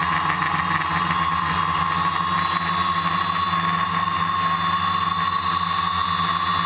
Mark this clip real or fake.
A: real